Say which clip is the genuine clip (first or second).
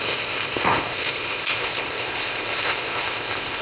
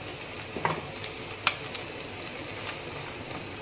second